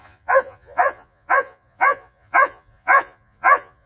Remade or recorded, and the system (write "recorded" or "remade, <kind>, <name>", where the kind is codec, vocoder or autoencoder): remade, vocoder, Vocos